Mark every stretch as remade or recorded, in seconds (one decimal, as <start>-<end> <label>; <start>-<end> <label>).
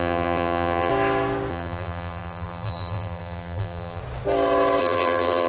0.0-0.9 remade; 0.9-1.5 recorded; 1.5-4.0 remade; 4.0-4.8 recorded; 4.8-5.5 remade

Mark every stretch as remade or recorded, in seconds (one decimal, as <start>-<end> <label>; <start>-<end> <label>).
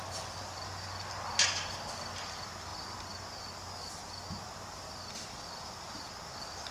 0.0-6.7 recorded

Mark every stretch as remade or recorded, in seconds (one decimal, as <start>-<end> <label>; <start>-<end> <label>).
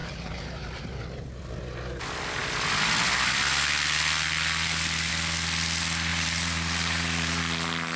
0.0-0.8 remade; 0.8-6.1 recorded; 6.1-7.4 remade; 7.4-8.0 recorded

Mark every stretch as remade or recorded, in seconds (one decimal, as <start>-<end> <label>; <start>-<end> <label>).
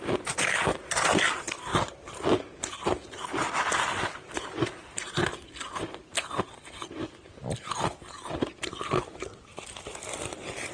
0.0-10.7 recorded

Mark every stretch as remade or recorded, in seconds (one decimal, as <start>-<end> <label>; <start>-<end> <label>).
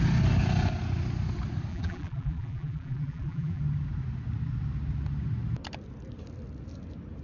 0.0-1.7 recorded; 1.7-3.6 remade; 3.6-7.2 recorded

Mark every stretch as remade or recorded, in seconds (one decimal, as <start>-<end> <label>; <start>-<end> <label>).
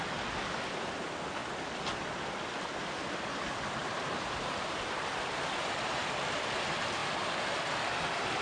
0.0-3.8 recorded; 3.8-5.0 remade; 5.0-8.4 recorded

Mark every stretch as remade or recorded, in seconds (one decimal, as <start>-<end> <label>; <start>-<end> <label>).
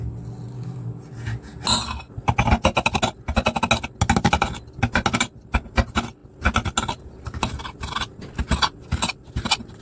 0.0-9.8 recorded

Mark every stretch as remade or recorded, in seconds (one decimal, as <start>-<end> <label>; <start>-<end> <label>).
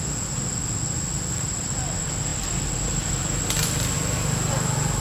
0.0-5.0 recorded